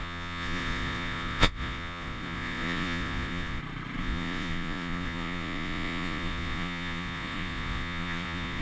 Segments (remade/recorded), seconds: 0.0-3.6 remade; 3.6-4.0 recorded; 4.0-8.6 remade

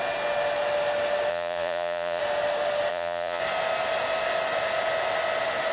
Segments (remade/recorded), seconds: 0.0-1.3 recorded; 1.3-2.2 remade; 2.2-2.9 recorded; 2.9-3.4 remade; 3.4-5.7 recorded

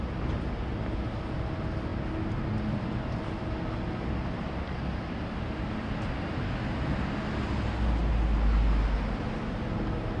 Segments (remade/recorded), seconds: 0.0-10.2 recorded

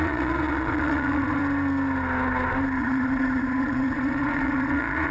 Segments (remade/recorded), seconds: 0.0-1.4 remade; 1.4-2.8 recorded; 2.8-5.1 remade

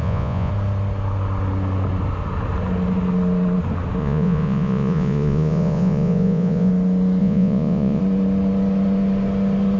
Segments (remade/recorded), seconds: 0.0-0.5 remade; 0.5-4.0 recorded; 4.0-6.7 remade; 6.7-7.2 recorded; 7.2-8.0 remade; 8.0-9.8 recorded

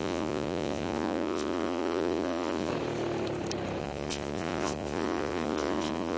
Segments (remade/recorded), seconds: 0.0-2.7 remade; 2.7-3.8 recorded; 3.8-6.2 remade

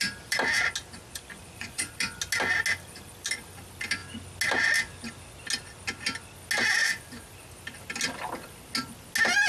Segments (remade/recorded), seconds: 0.0-1.3 recorded; 1.3-1.9 remade; 1.9-6.8 recorded; 6.8-7.5 remade; 7.5-9.5 recorded